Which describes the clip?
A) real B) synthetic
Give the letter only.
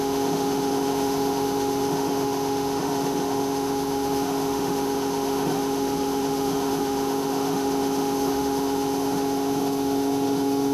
B